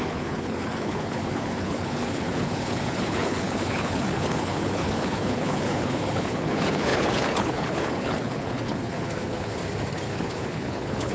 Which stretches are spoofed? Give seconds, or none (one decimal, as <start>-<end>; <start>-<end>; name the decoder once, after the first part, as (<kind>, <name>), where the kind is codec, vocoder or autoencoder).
0.0-9.6 (codec, HILCodec); 10.1-11.1